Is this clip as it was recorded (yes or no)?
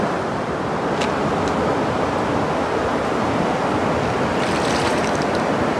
yes